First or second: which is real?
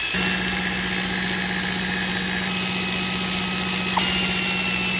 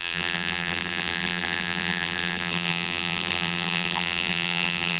first